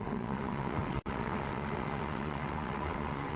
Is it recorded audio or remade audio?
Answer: remade